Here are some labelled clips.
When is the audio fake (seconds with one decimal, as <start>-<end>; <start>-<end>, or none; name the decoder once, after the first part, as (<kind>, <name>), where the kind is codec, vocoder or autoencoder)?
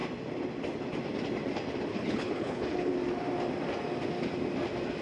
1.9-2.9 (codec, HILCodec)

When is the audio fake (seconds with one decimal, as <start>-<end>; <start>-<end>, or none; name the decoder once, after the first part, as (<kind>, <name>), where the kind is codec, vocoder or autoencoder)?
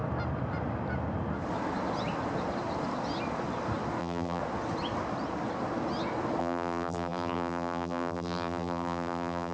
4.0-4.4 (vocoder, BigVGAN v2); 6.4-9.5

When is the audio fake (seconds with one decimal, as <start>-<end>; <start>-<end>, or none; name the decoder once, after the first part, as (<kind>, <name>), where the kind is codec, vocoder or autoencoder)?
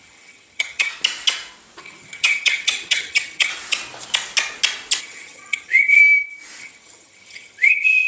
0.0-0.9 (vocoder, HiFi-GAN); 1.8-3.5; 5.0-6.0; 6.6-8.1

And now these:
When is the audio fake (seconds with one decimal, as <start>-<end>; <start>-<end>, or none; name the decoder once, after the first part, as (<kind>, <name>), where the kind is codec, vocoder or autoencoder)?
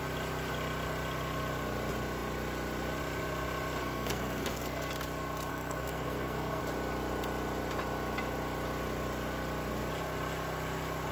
3.8-4.9 (codec, SNAC); 5.5-6.6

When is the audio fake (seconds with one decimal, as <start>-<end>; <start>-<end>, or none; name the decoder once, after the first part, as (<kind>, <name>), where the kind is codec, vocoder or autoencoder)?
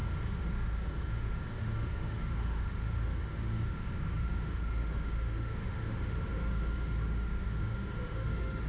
0.0-8.7 (autoencoder, DAC-VAE)